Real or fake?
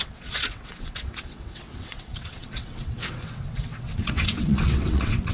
fake